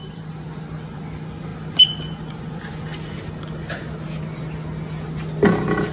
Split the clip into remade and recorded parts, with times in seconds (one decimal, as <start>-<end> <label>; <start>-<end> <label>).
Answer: 0.0-0.5 remade; 0.5-5.9 recorded